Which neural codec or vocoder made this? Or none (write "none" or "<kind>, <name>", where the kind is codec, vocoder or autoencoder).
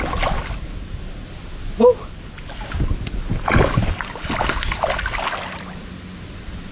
none